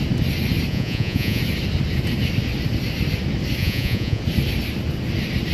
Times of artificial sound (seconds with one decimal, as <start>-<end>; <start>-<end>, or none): 0.7-1.4; 3.6-4.2